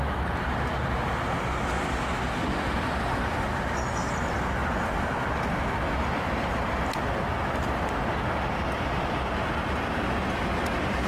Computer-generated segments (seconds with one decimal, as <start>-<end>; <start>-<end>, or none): none